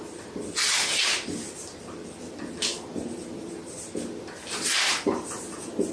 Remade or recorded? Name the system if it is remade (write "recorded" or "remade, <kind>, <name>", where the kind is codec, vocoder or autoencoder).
recorded